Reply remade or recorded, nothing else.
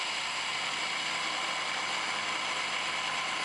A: recorded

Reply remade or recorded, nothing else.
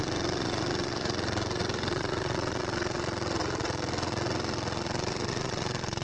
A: remade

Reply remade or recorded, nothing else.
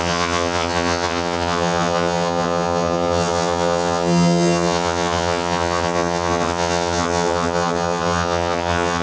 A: remade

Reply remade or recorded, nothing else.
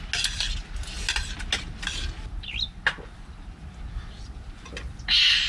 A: recorded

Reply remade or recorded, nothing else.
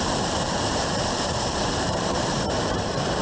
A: remade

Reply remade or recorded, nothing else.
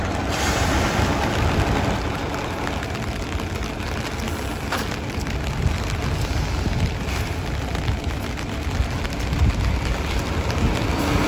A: recorded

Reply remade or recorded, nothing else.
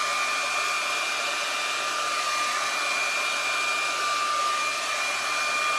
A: recorded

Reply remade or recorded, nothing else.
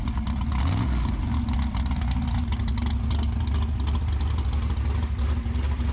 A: recorded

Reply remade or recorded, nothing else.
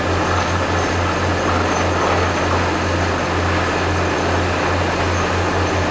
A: recorded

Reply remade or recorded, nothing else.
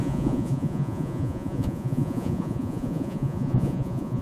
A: remade